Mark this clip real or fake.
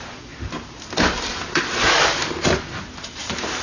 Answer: real